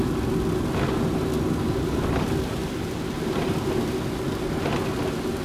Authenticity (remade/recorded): recorded